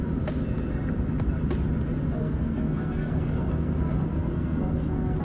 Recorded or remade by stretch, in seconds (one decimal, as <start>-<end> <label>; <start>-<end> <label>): 0.0-2.2 recorded; 2.2-5.2 remade